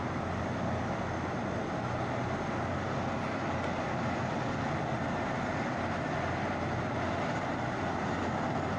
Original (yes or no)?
yes